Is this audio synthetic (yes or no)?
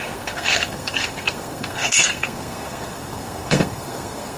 yes